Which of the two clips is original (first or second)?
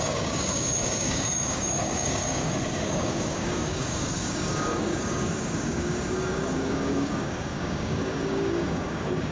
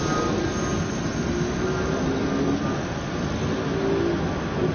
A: second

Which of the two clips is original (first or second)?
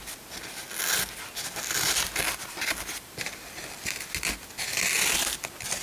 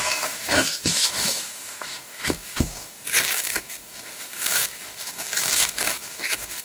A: first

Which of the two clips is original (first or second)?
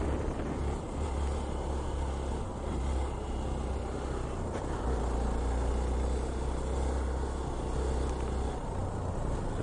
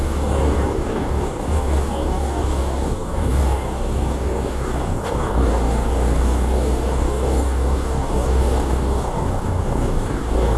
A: first